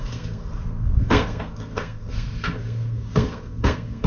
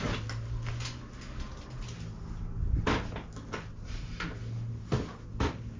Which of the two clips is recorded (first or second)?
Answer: second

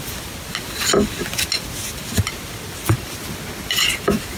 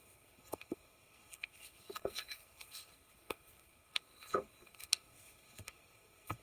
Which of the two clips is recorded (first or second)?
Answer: first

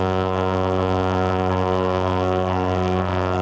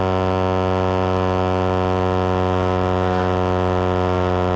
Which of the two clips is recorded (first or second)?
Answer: second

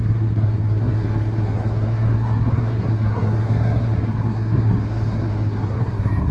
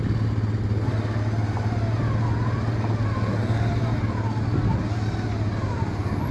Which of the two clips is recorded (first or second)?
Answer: second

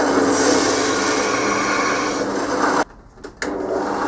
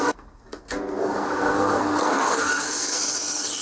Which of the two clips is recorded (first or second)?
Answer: first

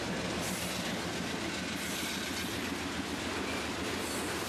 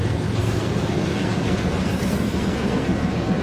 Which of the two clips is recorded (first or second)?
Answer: first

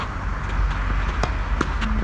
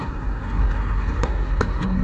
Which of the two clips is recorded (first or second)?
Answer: first